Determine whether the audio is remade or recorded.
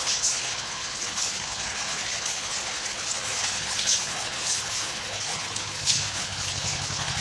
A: remade